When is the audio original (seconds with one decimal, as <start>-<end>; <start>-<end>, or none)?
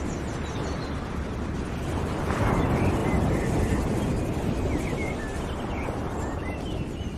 0.0-7.2